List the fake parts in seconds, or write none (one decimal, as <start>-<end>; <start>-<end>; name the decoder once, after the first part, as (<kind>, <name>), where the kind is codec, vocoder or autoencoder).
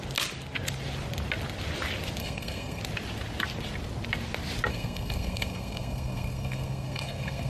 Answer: 2.2-2.8 (codec, SNAC); 4.7-7.5